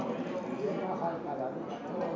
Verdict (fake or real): real